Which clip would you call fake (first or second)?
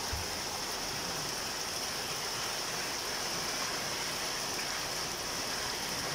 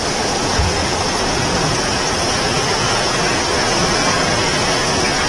second